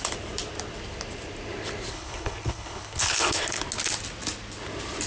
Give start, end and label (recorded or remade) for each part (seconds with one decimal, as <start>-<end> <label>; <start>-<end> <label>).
0.0-1.9 recorded; 1.9-3.6 remade; 3.6-5.1 recorded